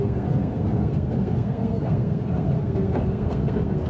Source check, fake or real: fake